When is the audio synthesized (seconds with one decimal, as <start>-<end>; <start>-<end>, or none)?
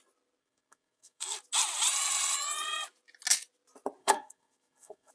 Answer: 0.4-1.4; 4.0-5.1